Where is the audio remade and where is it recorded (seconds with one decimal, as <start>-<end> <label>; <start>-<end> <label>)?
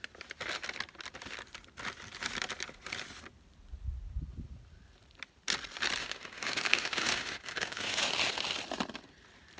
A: 0.0-6.0 recorded; 6.0-8.1 remade; 8.1-9.6 recorded